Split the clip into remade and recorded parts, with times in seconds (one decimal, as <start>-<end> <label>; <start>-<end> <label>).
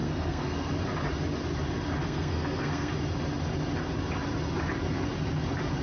0.0-0.7 remade; 0.7-2.0 recorded; 2.0-2.9 remade; 2.9-5.8 recorded